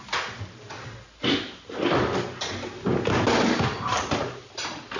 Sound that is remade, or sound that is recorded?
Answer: recorded